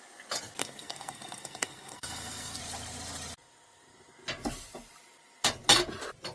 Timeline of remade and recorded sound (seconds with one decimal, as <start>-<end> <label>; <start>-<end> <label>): 0.0-0.6 recorded; 0.6-2.6 remade; 2.6-6.3 recorded

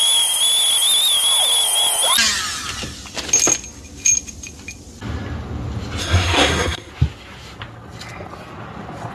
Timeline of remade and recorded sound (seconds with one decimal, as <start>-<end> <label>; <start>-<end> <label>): 0.0-6.0 recorded; 6.0-6.9 remade; 6.9-9.1 recorded

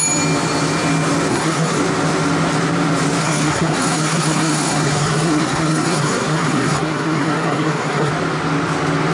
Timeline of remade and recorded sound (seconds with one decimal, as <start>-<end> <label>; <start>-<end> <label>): 0.0-1.3 recorded; 1.3-1.8 remade; 1.8-3.2 recorded; 3.2-8.1 remade; 8.1-9.1 recorded

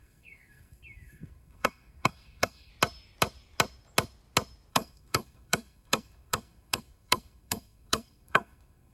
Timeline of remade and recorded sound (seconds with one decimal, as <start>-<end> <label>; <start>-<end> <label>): 0.0-2.7 remade; 2.7-4.7 recorded; 4.7-8.9 remade

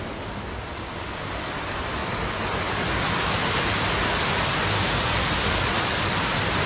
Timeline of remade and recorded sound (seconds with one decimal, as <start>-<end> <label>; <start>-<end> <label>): 0.0-6.7 recorded